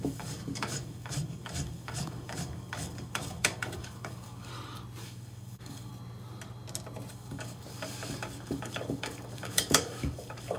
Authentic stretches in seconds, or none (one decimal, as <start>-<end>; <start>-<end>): 4.5-5.0; 5.9-7.1